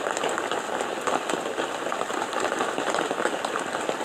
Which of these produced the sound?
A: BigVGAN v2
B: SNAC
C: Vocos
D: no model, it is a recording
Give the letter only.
D